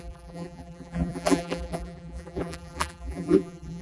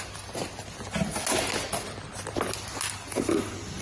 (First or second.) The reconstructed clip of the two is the first